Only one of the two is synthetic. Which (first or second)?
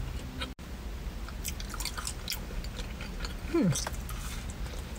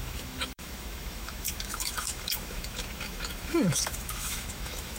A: second